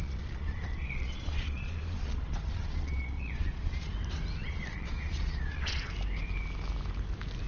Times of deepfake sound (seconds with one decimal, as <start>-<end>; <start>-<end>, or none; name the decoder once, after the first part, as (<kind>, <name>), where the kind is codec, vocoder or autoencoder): 0.0-3.9 (vocoder, Vocos); 4.4-5.9